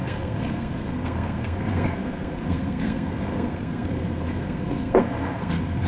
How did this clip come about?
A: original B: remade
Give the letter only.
B